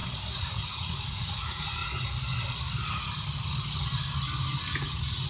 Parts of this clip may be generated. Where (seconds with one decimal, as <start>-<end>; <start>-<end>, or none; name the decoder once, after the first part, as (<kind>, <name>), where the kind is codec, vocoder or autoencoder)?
0.5-1.8 (vocoder, Vocos); 4.6-5.3